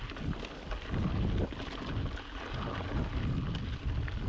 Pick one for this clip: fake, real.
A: real